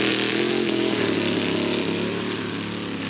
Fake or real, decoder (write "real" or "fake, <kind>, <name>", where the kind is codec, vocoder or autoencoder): real